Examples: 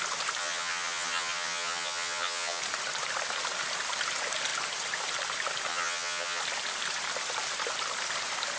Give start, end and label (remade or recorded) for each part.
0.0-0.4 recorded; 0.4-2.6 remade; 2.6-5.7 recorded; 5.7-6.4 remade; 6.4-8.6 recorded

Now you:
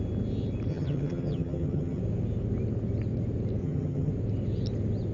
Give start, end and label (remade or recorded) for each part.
0.0-0.7 recorded; 0.7-2.0 remade; 2.0-3.6 recorded; 3.6-4.1 remade; 4.1-5.1 recorded

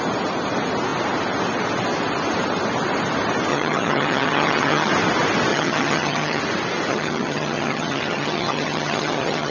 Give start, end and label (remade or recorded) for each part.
0.0-3.5 recorded; 3.5-4.9 remade; 4.9-5.5 recorded; 5.5-6.4 remade; 6.4-6.9 recorded; 6.9-9.5 remade

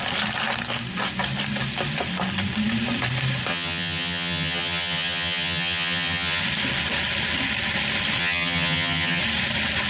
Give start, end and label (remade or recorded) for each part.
0.0-3.5 recorded; 3.5-6.4 remade; 6.4-8.2 recorded; 8.2-9.2 remade; 9.2-9.9 recorded

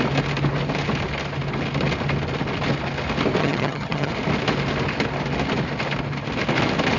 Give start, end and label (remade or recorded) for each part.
0.0-3.4 recorded; 3.4-4.1 remade; 4.1-7.0 recorded

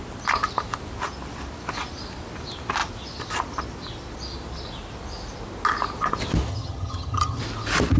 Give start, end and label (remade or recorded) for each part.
0.0-6.5 recorded; 6.5-7.4 remade; 7.4-8.0 recorded

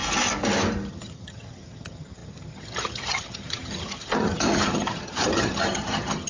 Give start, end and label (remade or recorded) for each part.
0.0-0.9 recorded; 0.9-6.3 remade